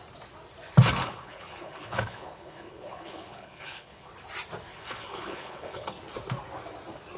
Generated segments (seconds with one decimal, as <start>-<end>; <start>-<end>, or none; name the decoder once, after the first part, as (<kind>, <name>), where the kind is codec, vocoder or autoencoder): 1.0-4.1 (codec, HILCodec); 4.7-6.0